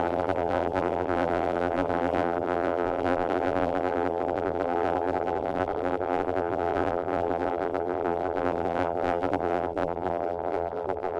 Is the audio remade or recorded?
remade